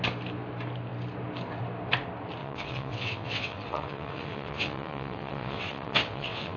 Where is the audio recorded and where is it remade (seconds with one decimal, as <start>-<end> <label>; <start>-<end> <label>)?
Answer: 0.0-2.4 recorded; 2.4-6.6 remade